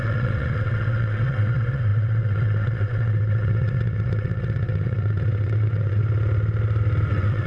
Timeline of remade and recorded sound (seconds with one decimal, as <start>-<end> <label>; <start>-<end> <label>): 0.0-6.0 remade; 6.0-7.1 recorded; 7.1-7.5 remade